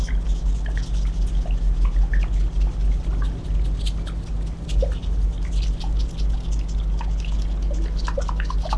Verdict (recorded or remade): recorded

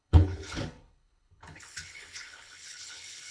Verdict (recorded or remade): remade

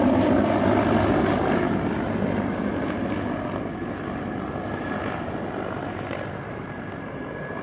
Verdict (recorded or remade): recorded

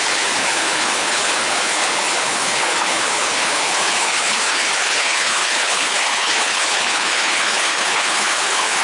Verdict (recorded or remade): remade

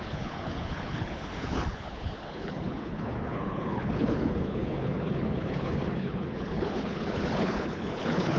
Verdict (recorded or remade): remade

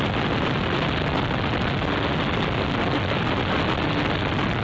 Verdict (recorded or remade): recorded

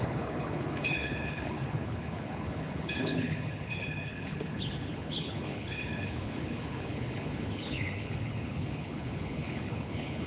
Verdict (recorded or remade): remade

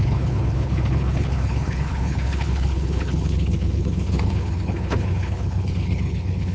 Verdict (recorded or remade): remade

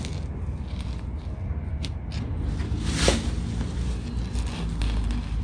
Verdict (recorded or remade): recorded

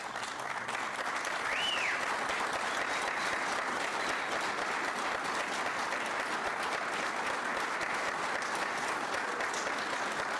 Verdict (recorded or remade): recorded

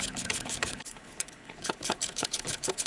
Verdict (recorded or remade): remade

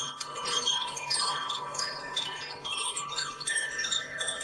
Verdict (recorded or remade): remade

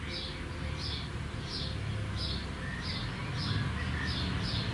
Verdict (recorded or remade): recorded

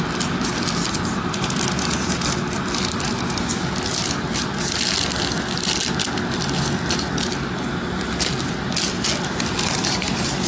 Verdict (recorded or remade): recorded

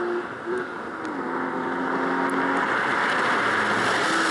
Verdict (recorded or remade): recorded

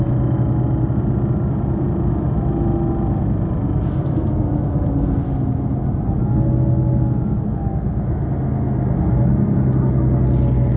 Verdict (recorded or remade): recorded